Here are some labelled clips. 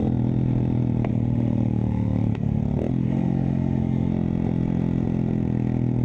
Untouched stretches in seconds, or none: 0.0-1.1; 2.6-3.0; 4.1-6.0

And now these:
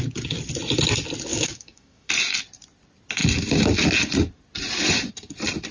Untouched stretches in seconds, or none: 0.0-1.3; 2.1-5.7

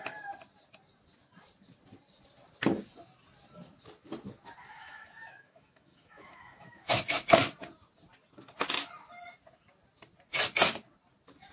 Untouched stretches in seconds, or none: 0.0-4.8; 7.0-11.5

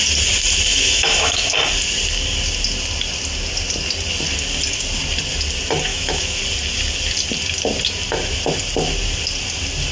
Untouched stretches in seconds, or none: 0.0-0.7; 1.5-5.9; 6.4-9.9

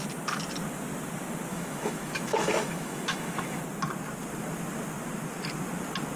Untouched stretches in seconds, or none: 0.0-1.5; 3.6-6.2

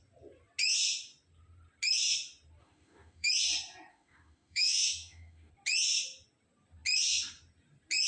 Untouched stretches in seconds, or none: 0.0-2.6; 3.3-3.9; 5.5-8.1

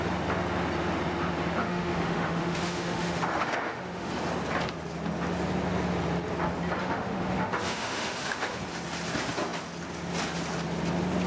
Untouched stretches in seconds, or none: 0.0-1.6; 4.1-6.8; 8.6-11.3

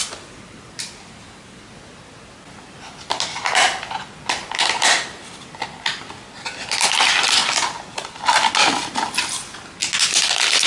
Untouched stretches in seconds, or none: 0.0-10.7